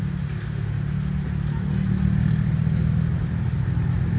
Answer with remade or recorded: recorded